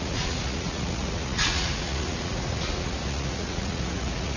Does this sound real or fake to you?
fake